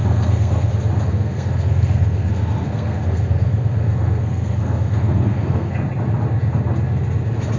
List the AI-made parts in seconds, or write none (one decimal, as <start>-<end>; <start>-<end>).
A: 0.0-0.7; 1.1-5.7